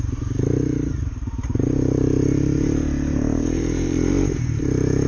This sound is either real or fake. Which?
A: fake